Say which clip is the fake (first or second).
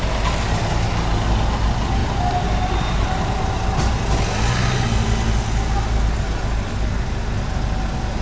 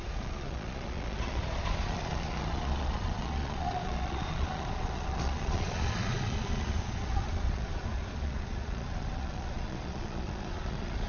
second